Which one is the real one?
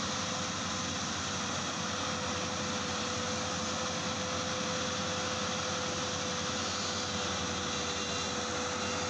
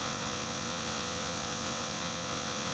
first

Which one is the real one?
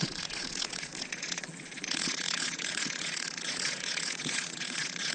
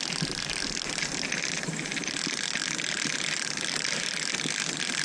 second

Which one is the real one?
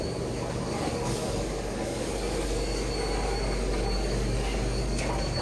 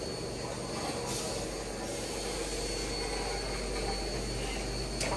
second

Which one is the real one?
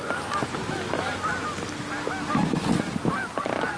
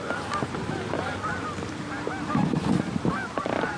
first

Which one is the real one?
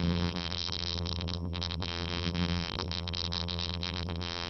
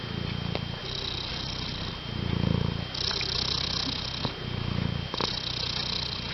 second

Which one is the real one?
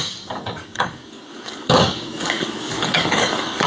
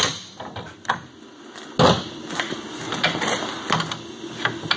second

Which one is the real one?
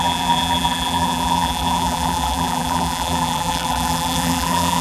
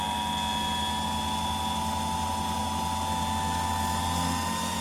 second